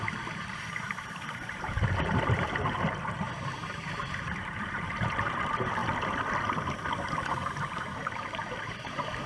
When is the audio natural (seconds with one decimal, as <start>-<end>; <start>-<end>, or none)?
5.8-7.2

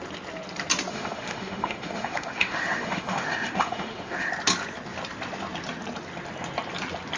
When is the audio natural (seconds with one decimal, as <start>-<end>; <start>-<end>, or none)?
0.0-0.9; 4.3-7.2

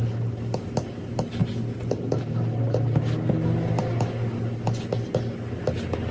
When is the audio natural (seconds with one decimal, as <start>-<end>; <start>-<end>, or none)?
0.0-6.1

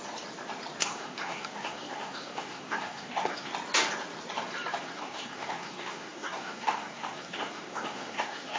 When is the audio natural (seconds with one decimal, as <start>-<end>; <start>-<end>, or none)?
0.0-0.8; 3.5-4.8

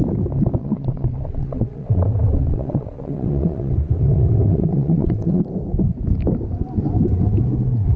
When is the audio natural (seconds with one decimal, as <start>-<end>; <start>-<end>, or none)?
0.0-0.6; 5.4-8.0